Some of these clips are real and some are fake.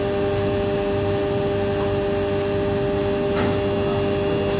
real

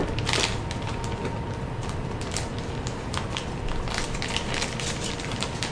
real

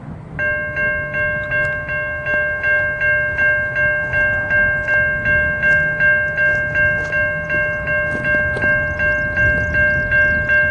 real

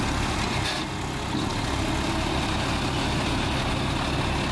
real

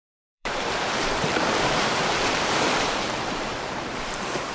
fake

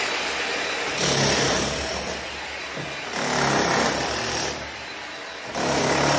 real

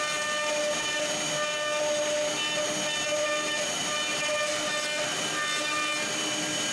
real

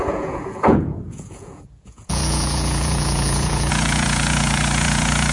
fake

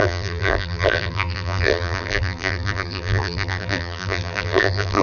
fake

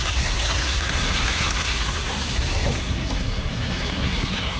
fake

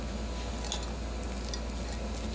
real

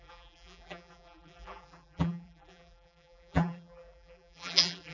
fake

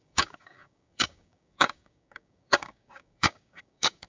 fake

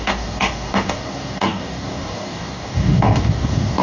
fake